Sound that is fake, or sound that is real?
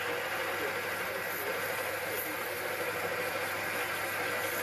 real